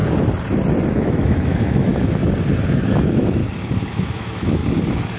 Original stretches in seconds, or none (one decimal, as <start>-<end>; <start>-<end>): 0.0-0.9; 1.9-2.7; 3.4-3.9; 4.6-5.2